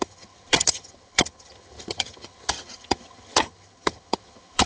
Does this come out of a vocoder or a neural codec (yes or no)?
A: yes